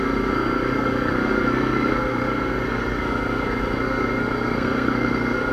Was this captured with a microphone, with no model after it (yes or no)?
no